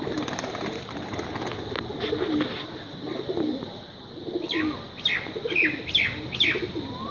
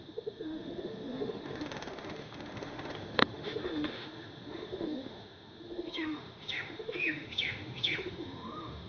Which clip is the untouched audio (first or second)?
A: first